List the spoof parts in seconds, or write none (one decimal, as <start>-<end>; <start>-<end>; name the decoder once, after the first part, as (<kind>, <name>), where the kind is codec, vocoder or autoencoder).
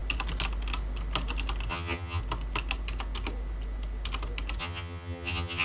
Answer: 1.7-2.2 (vocoder, HiFi-GAN); 4.6-5.6